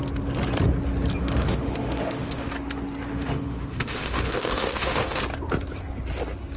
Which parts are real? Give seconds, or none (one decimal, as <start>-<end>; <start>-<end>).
0.0-1.2; 2.5-3.1; 5.2-6.6